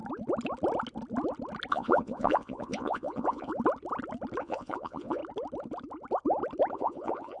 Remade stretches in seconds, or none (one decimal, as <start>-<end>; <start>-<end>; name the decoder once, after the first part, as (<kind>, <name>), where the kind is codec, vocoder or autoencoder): 1.7-3.5 (vocoder, Vocos); 4.4-5.2; 6.7-7.4